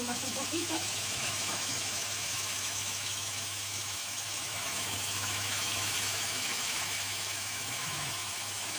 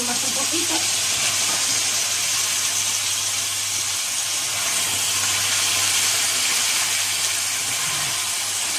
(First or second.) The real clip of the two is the second